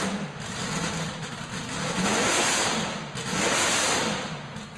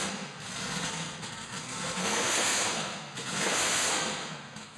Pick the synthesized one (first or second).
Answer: second